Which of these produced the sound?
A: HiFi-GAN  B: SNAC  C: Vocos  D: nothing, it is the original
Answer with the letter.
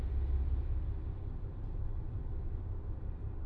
D